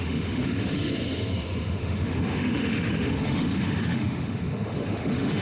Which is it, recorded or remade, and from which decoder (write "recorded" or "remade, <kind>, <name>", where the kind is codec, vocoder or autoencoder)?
remade, autoencoder, DAC-VAE